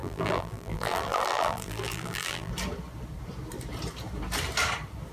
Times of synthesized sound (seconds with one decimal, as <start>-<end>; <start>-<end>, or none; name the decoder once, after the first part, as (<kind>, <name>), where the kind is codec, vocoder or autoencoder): 0.0-2.5 (vocoder, BigVGAN v2)